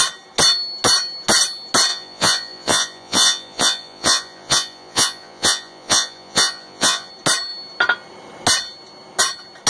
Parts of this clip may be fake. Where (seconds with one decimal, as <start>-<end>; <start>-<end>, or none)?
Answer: 1.9-7.1